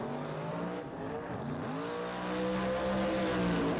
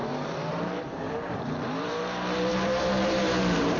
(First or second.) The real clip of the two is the first